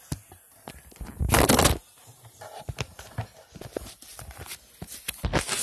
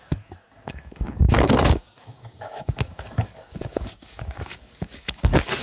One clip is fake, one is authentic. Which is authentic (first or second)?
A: first